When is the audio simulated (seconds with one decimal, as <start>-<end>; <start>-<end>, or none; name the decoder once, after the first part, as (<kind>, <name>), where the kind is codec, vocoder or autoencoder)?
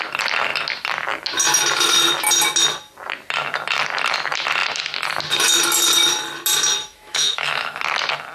6.8-7.8 (autoencoder, DAC-VAE)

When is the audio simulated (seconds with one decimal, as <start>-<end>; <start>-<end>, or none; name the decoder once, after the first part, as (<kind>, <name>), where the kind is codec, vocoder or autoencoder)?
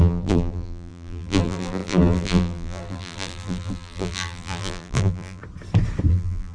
0.0-5.4 (vocoder, BigVGAN v2); 6.1-6.5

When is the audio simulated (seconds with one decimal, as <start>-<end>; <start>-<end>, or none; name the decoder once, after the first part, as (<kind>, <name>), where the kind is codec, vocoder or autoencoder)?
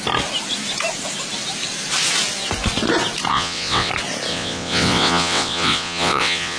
3.3-3.9 (vocoder, WaveNeXt); 4.3-6.6